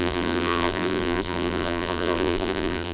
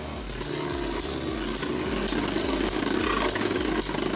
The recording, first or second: second